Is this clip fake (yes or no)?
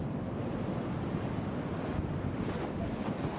no